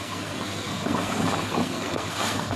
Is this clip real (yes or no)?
no